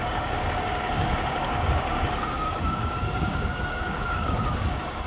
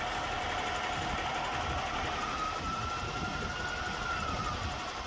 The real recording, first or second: second